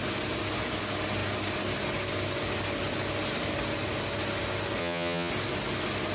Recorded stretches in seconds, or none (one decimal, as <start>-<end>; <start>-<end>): 0.0-4.8; 5.3-6.1